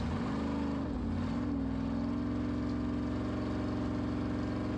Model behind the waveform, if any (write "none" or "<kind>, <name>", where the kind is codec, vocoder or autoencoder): none